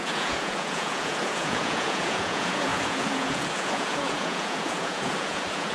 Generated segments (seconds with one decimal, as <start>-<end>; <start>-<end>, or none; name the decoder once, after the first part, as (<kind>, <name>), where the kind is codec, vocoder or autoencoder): 0.0-5.7 (vocoder, Vocos)